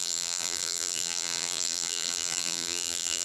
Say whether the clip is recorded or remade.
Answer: remade